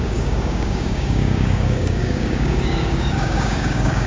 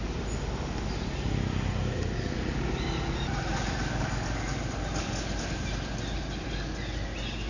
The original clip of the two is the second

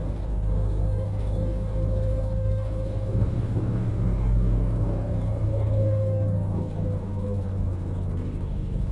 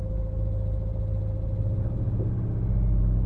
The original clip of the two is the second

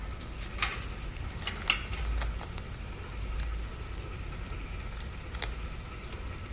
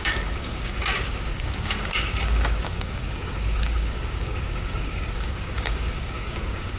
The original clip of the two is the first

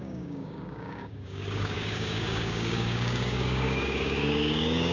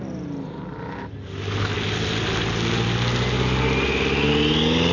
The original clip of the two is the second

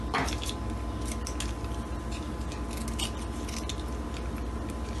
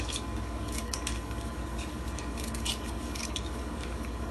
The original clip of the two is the first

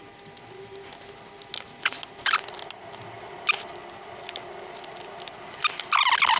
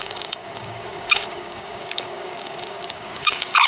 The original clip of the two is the first